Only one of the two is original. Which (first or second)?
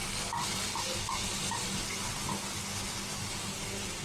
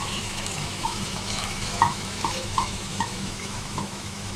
first